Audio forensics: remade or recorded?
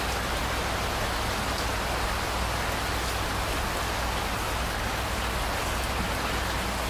recorded